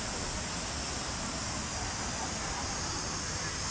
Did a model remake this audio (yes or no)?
no